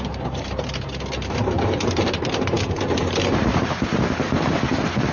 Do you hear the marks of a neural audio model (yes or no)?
yes